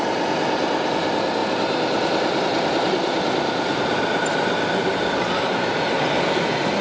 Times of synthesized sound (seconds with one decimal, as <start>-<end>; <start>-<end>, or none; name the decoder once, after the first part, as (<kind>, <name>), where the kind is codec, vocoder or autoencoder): none